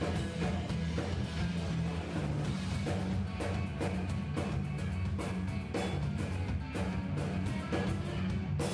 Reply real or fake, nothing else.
real